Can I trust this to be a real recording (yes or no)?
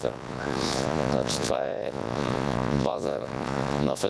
no